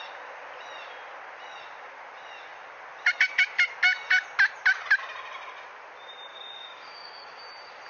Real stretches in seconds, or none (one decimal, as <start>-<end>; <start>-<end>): 0.0-6.3; 7.4-7.9